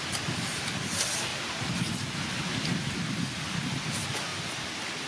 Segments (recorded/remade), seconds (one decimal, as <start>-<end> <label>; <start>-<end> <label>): 0.0-1.3 remade; 1.3-1.9 recorded; 1.9-5.1 remade